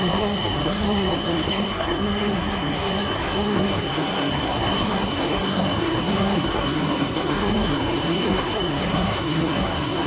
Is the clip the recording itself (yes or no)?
no